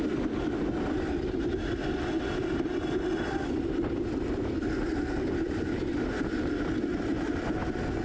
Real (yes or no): yes